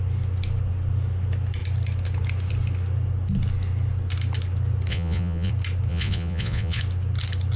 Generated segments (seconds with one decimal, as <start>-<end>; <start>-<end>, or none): 4.9-5.5; 5.9-6.8